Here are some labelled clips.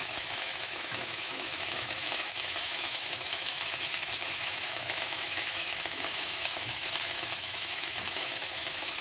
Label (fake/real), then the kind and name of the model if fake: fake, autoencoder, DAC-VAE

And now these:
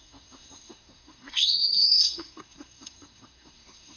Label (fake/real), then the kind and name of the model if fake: fake, codec, SNAC